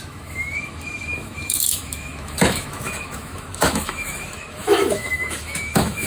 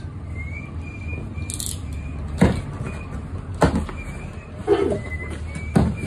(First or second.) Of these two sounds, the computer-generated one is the first